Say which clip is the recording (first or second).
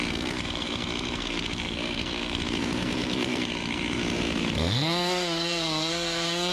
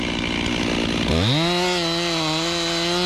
second